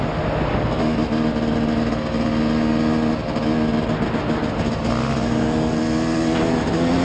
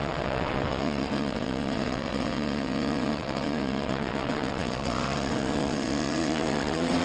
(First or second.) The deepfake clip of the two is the second